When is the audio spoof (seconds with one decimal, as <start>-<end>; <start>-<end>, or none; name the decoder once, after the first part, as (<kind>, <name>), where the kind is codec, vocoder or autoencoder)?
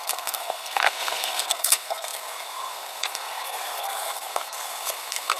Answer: 0.0-5.4 (codec, SNAC)